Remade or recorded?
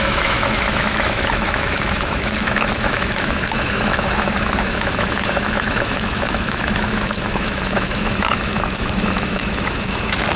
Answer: remade